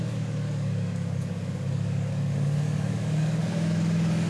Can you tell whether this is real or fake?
fake